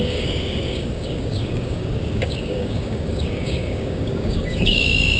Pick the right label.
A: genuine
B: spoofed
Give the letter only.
B